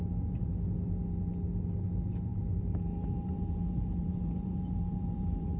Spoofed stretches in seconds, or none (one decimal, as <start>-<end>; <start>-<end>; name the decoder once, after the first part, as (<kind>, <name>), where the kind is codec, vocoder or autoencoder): 2.3-5.6 (vocoder, BigVGAN v2)